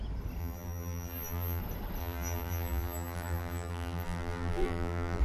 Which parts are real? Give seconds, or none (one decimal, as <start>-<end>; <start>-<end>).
0.0-0.4; 1.6-2.0